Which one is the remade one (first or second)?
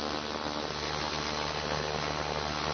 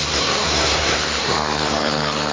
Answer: second